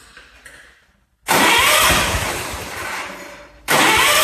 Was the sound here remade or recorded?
recorded